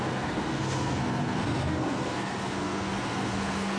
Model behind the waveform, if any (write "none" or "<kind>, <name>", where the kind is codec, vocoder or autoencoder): codec, SNAC